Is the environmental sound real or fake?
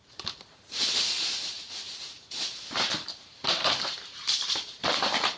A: fake